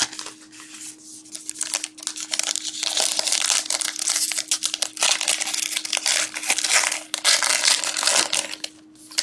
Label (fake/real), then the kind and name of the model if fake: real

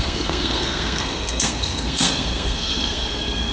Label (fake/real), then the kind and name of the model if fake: fake, codec, SNAC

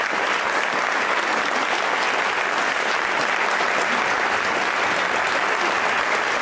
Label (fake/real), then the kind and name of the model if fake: real